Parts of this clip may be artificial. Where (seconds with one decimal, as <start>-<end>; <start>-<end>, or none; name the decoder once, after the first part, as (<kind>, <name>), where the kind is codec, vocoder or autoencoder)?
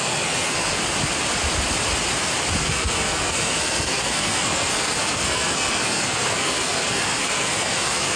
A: 0.0-0.8 (codec, SNAC); 2.6-8.2